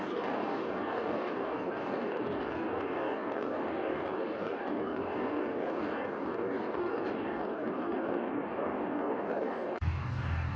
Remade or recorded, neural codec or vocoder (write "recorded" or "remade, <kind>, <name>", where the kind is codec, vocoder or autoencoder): remade, codec, DAC